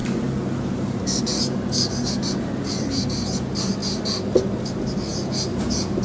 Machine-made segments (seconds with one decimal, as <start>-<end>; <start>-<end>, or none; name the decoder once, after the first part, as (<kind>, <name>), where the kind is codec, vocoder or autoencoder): 3.4-3.8 (vocoder, BigVGAN v2); 4.6-5.1

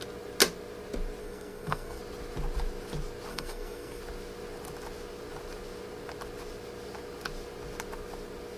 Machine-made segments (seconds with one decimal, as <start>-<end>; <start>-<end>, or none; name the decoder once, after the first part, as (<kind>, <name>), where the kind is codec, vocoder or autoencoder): 1.2-2.0 (codec, SNAC); 3.3-4.0

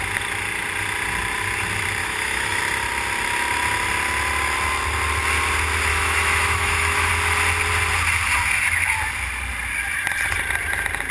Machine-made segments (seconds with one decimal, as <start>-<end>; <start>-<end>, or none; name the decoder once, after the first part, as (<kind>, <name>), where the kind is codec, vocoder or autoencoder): 2.0-2.6 (autoencoder, DAC-VAE); 5.9-7.1